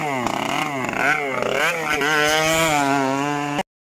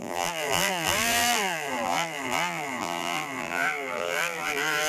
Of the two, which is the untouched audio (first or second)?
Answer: first